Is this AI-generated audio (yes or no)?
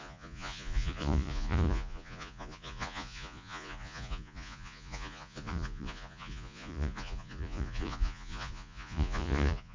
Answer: yes